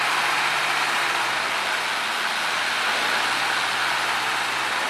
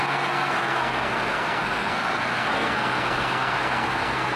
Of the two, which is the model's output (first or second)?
second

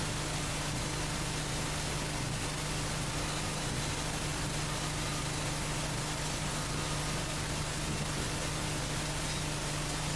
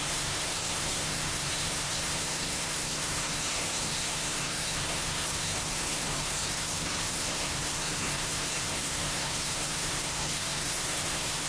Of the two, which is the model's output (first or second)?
second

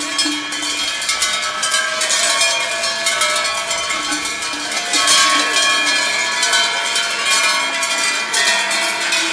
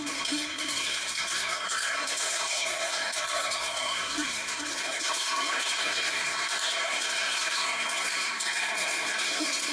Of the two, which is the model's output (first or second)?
second